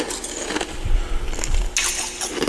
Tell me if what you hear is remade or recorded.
recorded